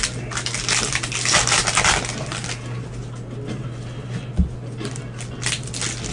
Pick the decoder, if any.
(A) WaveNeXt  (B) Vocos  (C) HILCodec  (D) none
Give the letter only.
D